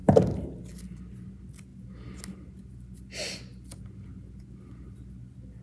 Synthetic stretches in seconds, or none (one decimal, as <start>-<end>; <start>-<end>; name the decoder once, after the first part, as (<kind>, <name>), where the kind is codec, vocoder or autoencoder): none